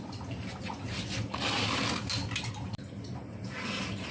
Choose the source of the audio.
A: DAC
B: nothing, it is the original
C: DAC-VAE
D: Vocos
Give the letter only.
B